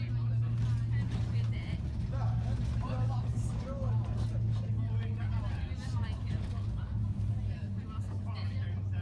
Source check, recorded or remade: recorded